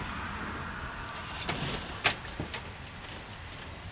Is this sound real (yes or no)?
yes